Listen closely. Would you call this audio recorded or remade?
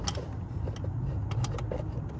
recorded